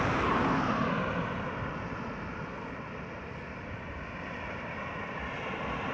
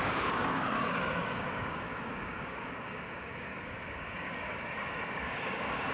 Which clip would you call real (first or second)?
first